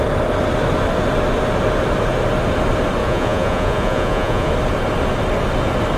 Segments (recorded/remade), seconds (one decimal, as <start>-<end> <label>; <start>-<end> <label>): 0.0-3.0 recorded; 3.0-4.5 remade; 4.5-6.0 recorded